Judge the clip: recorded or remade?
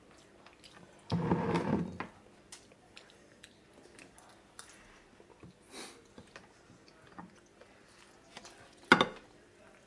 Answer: recorded